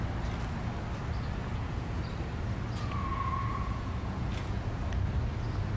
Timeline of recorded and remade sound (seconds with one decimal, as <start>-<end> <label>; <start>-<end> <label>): 0.0-1.4 recorded; 1.4-2.0 remade; 2.0-3.1 recorded; 3.1-4.8 remade; 4.8-5.8 recorded